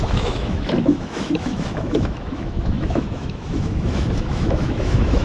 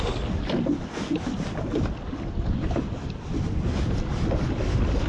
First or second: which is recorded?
second